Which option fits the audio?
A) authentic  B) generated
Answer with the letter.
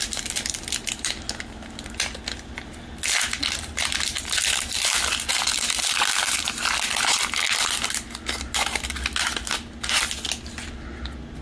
A